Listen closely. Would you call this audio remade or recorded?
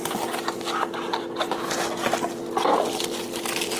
recorded